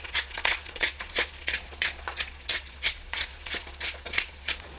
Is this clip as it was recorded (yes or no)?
no